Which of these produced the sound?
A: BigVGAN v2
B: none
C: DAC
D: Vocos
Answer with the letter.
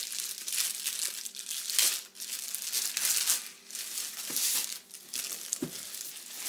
B